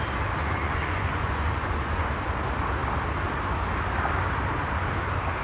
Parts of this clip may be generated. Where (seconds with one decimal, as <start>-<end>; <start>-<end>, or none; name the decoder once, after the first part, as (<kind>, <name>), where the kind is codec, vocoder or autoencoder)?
0.4-2.1 (vocoder, Vocos)